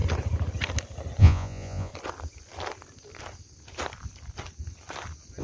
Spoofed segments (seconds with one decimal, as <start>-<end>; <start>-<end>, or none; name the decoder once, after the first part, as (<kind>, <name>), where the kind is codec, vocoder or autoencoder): 1.2-1.9 (vocoder, Vocos)